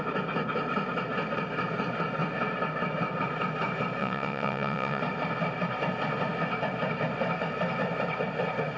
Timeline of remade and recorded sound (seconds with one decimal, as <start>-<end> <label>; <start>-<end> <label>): 0.0-4.0 recorded; 4.0-5.0 remade; 5.0-8.8 recorded